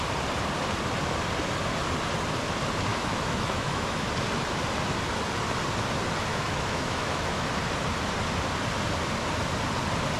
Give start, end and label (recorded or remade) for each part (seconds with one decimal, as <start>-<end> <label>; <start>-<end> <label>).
0.0-2.9 recorded; 2.9-4.1 remade; 4.1-6.3 recorded; 6.3-7.5 remade; 7.5-10.2 recorded